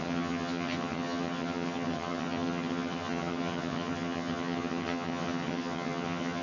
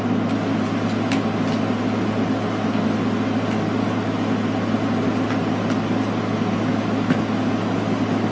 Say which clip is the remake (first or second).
first